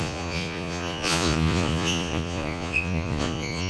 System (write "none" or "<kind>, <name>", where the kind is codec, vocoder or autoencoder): vocoder, Vocos